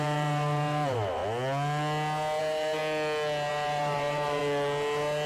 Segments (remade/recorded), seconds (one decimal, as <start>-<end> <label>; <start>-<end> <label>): 0.0-1.2 remade; 1.2-2.4 recorded; 2.4-2.8 remade; 2.8-3.5 recorded; 3.5-4.4 remade; 4.4-5.3 recorded